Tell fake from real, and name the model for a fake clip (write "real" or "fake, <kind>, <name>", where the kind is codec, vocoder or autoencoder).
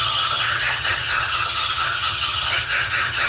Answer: fake, vocoder, HiFi-GAN